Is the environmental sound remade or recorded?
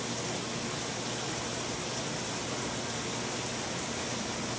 recorded